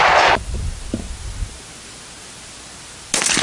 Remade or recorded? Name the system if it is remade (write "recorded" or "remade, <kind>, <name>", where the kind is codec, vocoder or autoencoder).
recorded